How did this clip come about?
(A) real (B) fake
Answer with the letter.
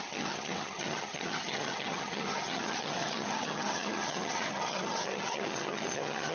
B